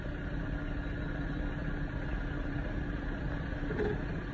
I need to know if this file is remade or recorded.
recorded